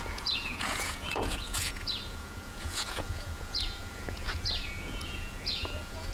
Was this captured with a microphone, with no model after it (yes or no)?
no